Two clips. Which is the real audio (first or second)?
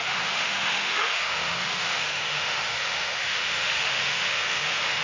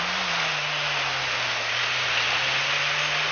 second